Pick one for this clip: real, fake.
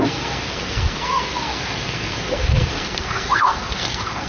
fake